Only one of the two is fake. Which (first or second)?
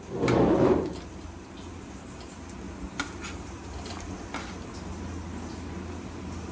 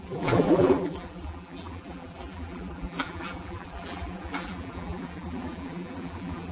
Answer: second